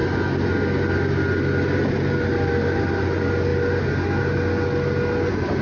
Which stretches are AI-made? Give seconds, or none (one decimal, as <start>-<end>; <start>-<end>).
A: none